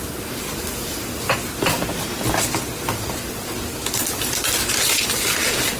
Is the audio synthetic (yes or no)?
no